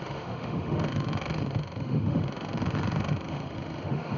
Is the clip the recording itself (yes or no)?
no